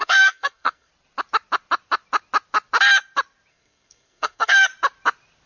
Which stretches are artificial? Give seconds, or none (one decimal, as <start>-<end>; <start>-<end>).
0.0-0.9; 3.5-4.7